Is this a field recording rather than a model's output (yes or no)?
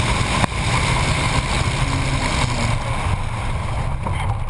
yes